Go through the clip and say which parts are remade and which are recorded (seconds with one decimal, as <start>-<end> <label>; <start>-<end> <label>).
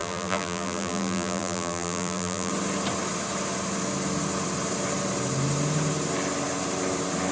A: 0.0-2.5 remade; 2.5-7.3 recorded